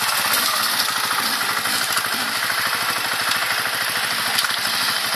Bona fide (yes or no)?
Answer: yes